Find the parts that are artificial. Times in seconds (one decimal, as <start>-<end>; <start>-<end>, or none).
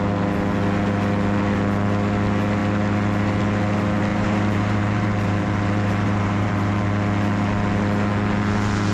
4.1-6.9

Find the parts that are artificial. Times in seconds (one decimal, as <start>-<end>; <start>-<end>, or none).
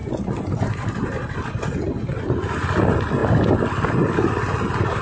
none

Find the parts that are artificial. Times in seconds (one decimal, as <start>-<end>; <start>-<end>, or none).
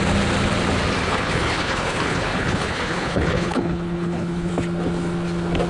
1.1-4.5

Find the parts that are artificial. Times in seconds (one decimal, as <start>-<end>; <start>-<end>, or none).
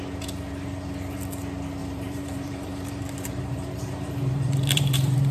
1.8-5.3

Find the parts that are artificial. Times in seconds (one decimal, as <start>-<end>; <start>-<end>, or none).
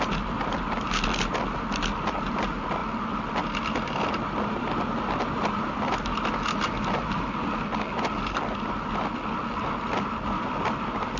none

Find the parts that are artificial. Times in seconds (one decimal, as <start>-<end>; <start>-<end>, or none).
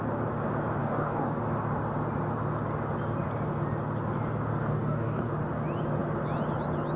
0.8-1.4; 4.6-5.3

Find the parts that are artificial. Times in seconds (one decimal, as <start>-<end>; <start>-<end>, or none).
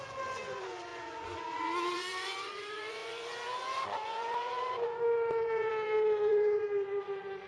0.0-7.5